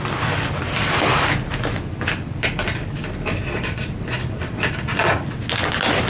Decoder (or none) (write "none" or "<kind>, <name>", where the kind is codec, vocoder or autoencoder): none